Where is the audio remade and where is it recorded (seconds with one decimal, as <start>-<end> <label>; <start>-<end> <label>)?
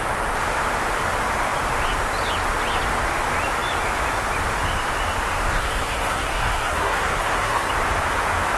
0.0-5.5 recorded; 5.5-7.7 remade; 7.7-8.6 recorded